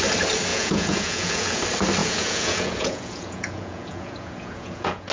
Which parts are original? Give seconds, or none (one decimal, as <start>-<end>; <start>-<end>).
0.0-0.5; 1.6-2.0